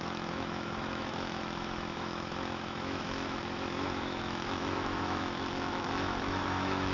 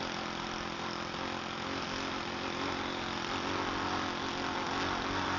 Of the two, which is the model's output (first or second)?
first